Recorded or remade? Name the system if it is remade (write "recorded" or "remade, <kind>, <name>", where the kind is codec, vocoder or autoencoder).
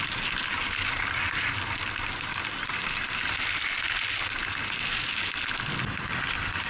recorded